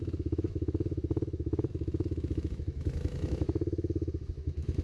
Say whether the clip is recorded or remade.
remade